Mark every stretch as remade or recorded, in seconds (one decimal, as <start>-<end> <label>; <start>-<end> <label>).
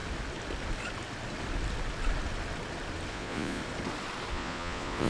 0.0-3.1 recorded; 3.1-3.6 remade; 3.6-4.3 recorded; 4.3-5.1 remade